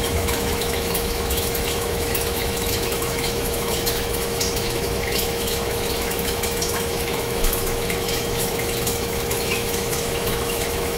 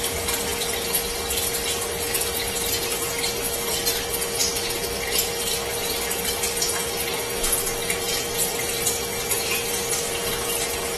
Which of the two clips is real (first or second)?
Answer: second